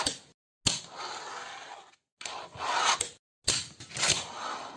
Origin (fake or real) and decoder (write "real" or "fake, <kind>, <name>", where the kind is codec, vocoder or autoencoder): real